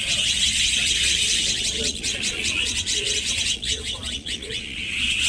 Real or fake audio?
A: fake